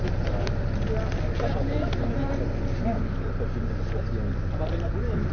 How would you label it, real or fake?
real